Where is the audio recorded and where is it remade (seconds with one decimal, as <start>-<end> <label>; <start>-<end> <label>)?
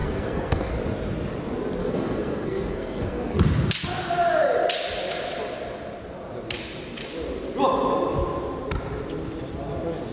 0.0-0.7 remade; 0.7-1.8 recorded; 1.8-3.4 remade; 3.4-10.1 recorded